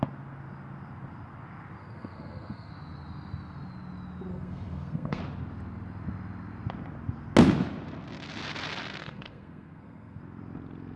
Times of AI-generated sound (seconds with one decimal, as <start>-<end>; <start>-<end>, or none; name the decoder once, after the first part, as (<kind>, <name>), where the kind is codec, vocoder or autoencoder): 1.8-2.7 (codec, SNAC); 4.3-5.2; 9.0-10.2